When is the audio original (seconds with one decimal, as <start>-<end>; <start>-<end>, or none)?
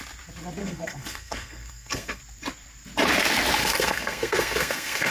0.0-0.6; 2.2-3.6